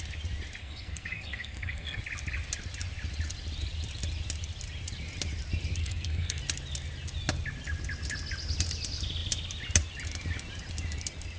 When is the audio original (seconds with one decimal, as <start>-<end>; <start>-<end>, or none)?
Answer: 0.0-0.6; 2.0-5.8; 6.4-11.4